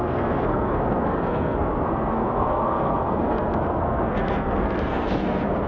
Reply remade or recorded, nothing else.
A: remade